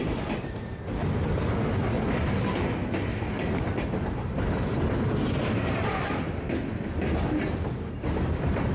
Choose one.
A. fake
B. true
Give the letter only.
B